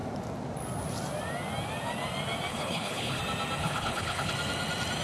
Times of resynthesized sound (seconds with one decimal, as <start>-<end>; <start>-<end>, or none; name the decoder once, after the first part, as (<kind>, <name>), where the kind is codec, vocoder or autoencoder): 2.5-3.2 (codec, HILCodec); 3.6-4.3